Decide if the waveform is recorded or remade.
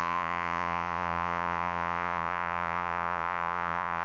remade